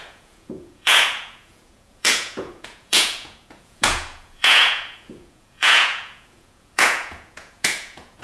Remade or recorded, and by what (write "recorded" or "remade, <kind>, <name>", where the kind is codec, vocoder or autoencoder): remade, vocoder, Vocos